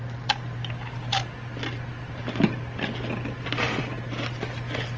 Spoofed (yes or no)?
no